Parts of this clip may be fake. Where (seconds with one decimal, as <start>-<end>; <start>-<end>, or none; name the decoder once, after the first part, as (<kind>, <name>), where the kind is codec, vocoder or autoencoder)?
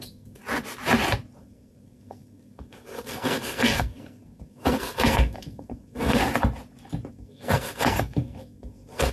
0.0-0.4 (codec, SNAC); 1.4-6.2; 7.1-9.1